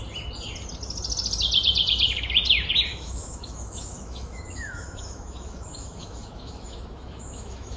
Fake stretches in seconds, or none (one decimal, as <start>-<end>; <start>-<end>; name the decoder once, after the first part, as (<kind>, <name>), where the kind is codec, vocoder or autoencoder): 2.9-7.8 (autoencoder, DAC-VAE)